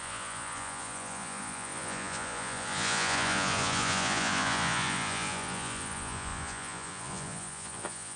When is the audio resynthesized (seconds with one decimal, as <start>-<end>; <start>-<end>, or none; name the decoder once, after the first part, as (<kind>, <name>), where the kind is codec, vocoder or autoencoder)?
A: 0.0-8.2 (vocoder, Vocos)